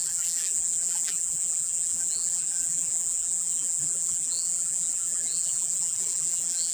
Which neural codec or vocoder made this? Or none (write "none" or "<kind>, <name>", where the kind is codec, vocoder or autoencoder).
vocoder, BigVGAN v2